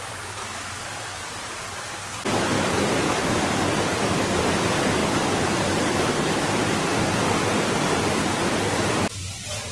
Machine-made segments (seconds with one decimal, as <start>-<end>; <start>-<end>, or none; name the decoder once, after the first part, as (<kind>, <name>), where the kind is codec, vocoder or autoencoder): none